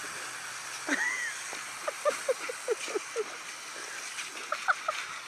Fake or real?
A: real